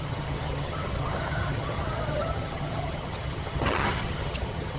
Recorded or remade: remade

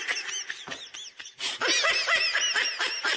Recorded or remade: recorded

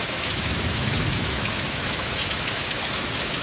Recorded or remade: remade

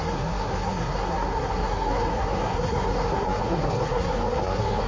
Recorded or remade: remade